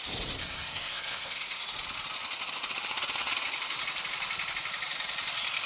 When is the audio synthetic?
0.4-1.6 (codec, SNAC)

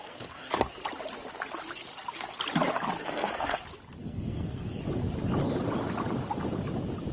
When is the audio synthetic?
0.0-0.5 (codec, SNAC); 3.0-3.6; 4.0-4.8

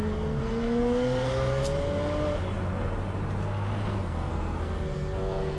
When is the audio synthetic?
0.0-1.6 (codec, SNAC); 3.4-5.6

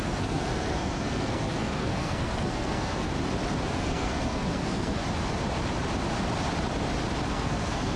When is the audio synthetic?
0.0-3.1 (codec, SNAC); 3.7-5.0; 7.3-8.0